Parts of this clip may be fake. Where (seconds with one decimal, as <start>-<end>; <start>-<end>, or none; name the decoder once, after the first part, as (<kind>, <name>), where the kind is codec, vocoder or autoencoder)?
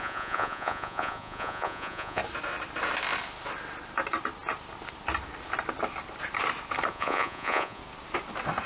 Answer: 0.0-2.2 (vocoder, Vocos); 6.9-7.8